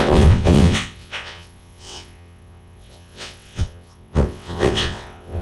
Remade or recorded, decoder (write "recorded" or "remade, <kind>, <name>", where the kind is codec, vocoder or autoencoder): remade, vocoder, WaveNeXt